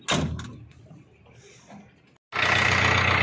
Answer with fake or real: real